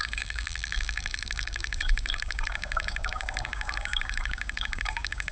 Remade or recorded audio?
remade